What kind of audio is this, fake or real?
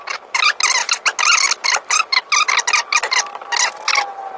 real